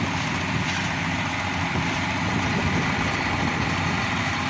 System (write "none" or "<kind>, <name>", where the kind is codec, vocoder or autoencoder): none